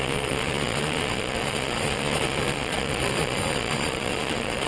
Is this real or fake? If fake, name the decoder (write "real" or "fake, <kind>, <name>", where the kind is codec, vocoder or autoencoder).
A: fake, vocoder, Vocos